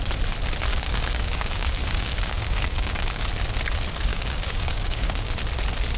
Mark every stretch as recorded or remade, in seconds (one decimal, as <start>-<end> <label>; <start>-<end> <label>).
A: 0.0-0.7 recorded; 0.7-3.2 remade; 3.2-4.1 recorded; 4.1-5.3 remade; 5.3-6.0 recorded